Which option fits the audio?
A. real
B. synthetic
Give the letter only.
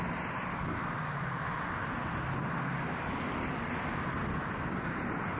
A